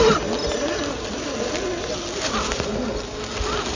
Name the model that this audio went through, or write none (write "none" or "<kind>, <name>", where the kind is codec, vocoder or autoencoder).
none